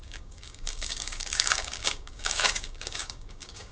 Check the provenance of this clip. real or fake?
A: fake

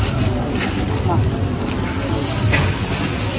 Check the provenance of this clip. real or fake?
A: real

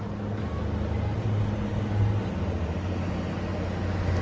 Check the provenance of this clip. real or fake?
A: real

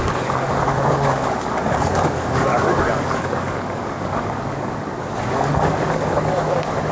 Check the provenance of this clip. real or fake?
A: fake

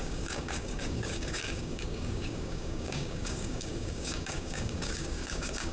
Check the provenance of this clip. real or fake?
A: fake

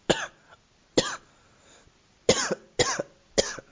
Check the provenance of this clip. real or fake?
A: real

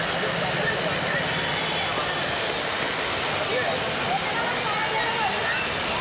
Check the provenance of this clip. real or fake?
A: real